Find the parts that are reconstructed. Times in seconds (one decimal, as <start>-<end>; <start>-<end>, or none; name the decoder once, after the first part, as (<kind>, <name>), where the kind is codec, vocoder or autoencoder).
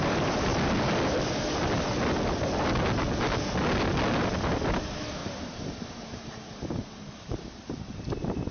0.0-0.5 (vocoder, BigVGAN v2); 4.4-8.5